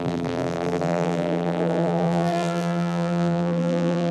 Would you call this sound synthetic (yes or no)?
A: yes